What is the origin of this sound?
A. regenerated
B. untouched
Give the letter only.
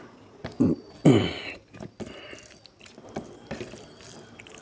B